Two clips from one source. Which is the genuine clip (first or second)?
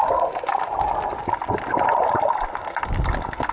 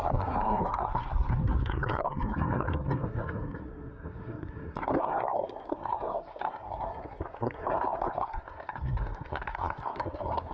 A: first